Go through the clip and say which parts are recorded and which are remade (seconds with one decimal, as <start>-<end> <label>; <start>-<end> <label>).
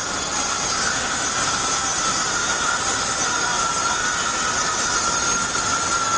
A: 0.0-2.4 recorded; 2.4-3.0 remade; 3.0-6.2 recorded